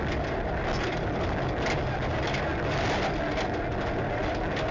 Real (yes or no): yes